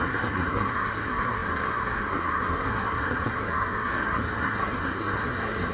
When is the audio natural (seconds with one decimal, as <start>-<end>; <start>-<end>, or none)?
none

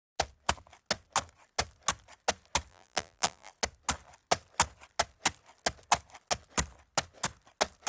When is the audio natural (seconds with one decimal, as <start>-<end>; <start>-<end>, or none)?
0.0-2.7; 3.5-7.9

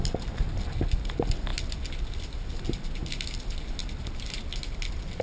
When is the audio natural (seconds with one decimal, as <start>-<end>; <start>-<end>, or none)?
0.0-5.2

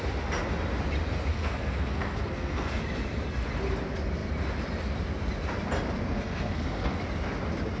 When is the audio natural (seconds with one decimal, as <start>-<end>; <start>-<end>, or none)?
0.0-1.3; 2.8-6.1; 7.0-7.8

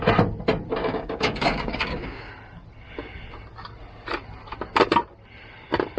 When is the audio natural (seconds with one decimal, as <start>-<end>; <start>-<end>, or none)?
0.0-0.8; 2.3-6.0

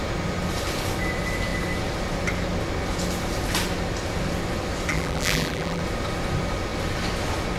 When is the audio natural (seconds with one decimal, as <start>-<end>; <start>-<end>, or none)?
0.0-4.9; 5.8-7.6